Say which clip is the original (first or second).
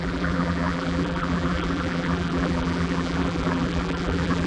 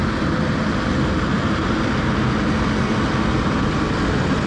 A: second